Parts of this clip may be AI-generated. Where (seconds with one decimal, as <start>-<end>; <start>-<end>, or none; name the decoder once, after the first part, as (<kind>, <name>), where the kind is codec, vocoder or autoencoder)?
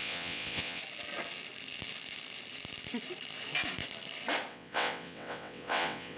0.0-0.8 (vocoder, WaveNeXt); 4.5-6.2